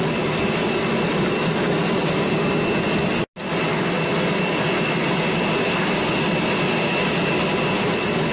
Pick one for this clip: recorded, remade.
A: recorded